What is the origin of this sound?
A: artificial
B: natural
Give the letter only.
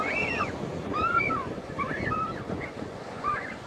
A